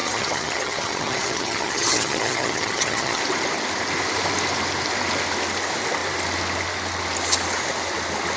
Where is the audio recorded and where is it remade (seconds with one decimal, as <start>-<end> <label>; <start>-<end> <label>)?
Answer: 0.0-3.2 remade; 3.2-8.4 recorded